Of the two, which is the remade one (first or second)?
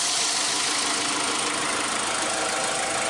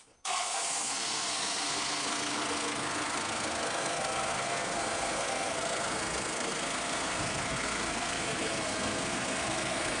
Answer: second